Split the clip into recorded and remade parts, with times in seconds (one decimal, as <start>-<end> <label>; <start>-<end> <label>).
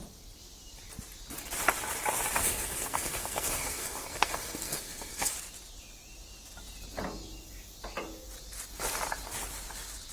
0.0-2.4 recorded; 2.4-5.3 remade; 5.3-10.1 recorded